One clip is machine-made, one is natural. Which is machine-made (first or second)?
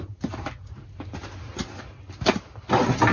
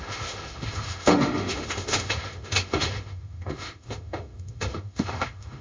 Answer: second